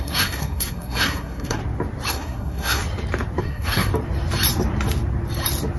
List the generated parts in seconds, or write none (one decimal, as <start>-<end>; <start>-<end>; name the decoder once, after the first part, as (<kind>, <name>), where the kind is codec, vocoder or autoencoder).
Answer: 0.0-1.6 (codec, SNAC); 2.1-2.8; 3.4-3.9